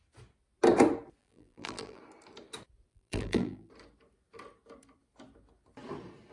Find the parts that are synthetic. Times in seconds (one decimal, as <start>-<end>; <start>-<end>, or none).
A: 1.2-2.0; 2.9-3.7

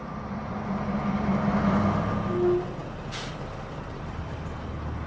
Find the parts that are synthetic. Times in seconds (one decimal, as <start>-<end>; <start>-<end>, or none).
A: none

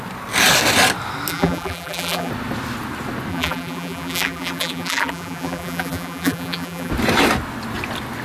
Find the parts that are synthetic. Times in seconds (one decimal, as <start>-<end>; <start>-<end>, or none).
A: 1.3-2.3; 3.3-6.9

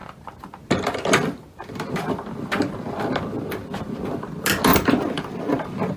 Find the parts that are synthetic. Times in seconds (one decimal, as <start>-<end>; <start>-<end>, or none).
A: 4.7-5.6